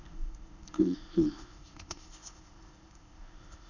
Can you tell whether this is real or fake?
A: fake